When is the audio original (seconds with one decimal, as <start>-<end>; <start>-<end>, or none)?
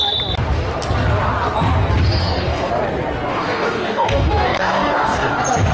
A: 0.0-2.2; 2.7-3.3; 5.3-5.7